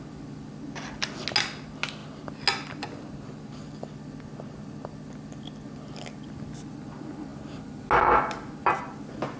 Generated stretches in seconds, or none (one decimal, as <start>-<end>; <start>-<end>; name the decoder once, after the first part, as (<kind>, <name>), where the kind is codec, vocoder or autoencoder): none